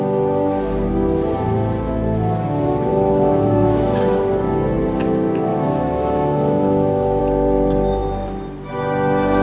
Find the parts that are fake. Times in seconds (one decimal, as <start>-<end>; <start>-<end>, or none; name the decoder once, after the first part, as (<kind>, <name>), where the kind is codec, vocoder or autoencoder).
2.9-4.2 (autoencoder, DAC-VAE); 5.5-7.2